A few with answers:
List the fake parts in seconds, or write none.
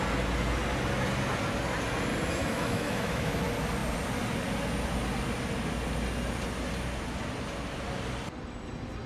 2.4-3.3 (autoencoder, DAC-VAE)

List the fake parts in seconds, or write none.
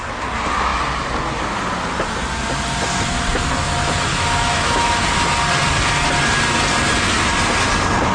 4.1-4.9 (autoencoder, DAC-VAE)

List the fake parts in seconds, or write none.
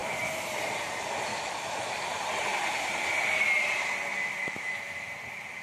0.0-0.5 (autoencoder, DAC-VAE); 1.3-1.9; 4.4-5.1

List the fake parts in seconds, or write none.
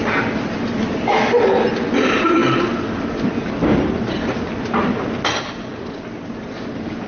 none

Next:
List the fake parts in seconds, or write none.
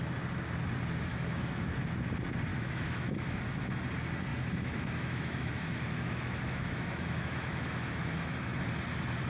1.1-1.7 (autoencoder, DAC-VAE); 2.5-3.4; 4.3-8.6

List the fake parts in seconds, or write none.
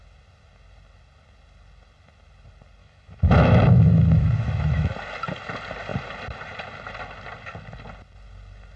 2.8-4.9 (autoencoder, DAC-VAE)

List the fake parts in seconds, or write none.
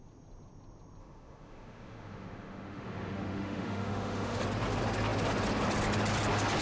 1.0-4.4 (autoencoder, DAC-VAE)